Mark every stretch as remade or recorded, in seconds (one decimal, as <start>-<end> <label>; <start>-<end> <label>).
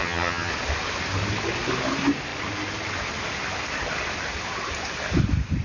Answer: 0.0-0.5 remade; 0.5-5.6 recorded